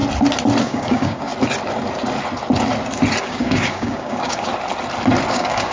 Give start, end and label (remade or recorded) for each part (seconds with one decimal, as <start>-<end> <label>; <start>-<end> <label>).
0.0-0.6 recorded; 0.6-1.3 remade; 1.3-3.2 recorded; 3.2-4.5 remade; 4.5-5.3 recorded; 5.3-5.7 remade